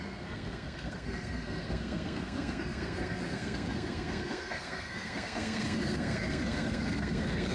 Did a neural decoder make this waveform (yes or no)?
yes